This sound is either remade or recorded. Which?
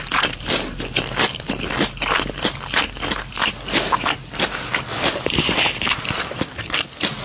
recorded